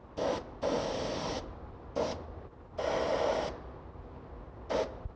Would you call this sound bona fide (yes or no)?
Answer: yes